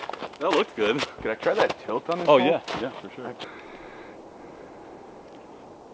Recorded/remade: recorded